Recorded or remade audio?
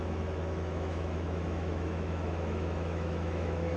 remade